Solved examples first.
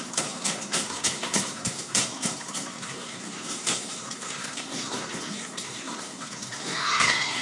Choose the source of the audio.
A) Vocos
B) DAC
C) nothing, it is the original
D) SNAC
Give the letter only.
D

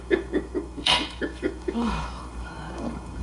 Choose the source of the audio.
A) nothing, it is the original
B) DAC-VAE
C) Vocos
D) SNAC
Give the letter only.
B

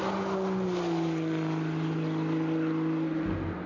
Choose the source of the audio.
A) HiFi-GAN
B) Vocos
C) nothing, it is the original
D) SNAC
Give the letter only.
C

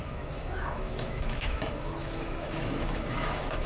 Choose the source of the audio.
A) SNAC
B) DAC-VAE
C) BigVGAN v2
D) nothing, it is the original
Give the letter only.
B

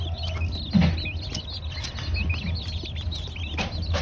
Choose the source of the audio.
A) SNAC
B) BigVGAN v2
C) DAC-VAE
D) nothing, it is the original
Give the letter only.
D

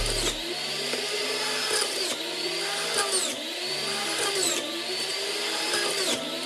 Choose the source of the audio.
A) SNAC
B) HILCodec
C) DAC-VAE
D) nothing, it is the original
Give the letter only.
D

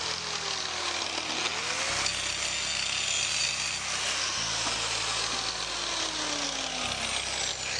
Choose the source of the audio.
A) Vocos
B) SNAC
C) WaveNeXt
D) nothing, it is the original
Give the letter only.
D